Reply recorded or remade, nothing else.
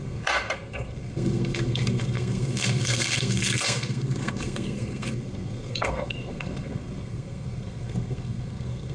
remade